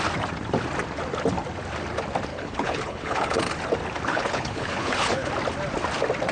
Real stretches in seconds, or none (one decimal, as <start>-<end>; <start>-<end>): 0.0-2.3; 3.5-4.1; 5.3-6.3